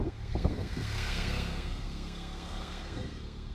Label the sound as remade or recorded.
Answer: remade